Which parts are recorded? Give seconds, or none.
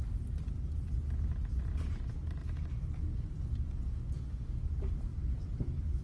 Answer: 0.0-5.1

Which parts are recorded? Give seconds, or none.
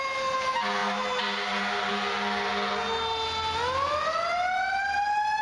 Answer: 0.0-0.8; 1.9-5.4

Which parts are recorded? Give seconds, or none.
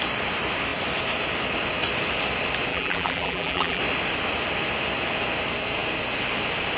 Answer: 0.0-2.7; 3.8-6.8